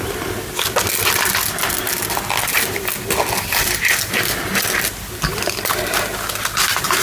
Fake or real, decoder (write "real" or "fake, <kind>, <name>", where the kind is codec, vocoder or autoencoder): real